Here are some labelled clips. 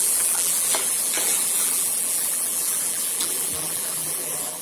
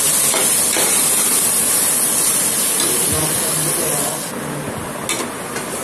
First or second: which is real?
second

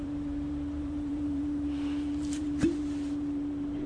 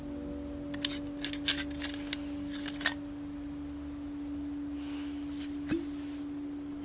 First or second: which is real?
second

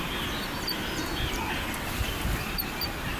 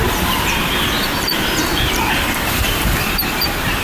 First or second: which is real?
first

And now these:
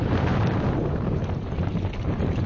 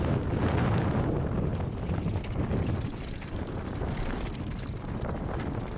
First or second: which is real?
second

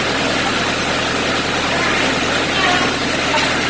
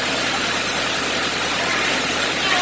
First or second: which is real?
first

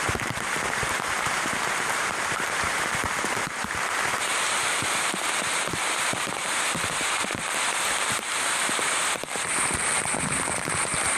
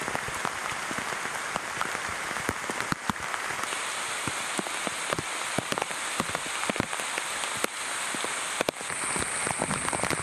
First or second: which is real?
second